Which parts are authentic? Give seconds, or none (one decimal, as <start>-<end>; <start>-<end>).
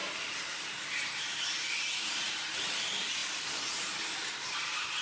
0.0-5.0